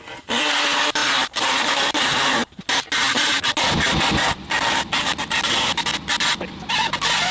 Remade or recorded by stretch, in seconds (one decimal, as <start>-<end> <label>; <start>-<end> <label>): 0.0-7.3 recorded